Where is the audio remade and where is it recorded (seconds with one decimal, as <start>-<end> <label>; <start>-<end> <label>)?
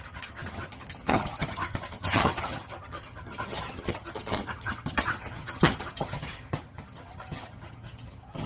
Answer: 0.0-8.5 remade